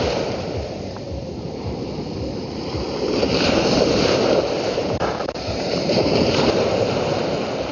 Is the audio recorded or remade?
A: remade